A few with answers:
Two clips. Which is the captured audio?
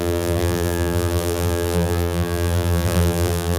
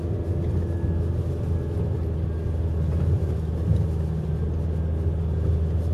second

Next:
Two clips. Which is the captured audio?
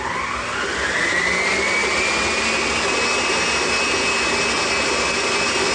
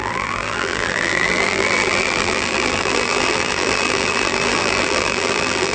first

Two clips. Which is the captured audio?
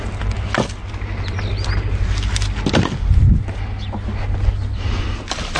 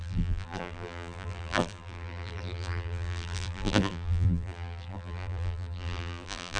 first